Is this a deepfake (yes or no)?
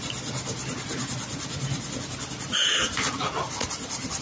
no